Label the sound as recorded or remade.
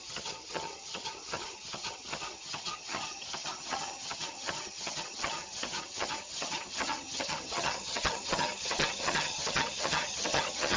remade